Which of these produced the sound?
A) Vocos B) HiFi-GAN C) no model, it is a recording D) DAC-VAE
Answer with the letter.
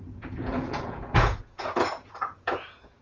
A